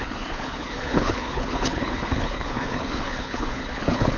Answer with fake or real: fake